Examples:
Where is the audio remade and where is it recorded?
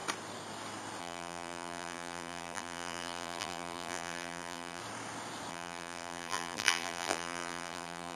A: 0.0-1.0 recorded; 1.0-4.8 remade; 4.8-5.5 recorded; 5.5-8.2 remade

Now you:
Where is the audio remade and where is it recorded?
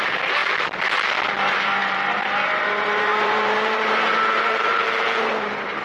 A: 0.0-0.4 remade; 0.4-1.4 recorded; 1.4-5.8 remade